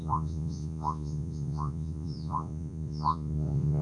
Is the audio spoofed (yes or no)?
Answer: yes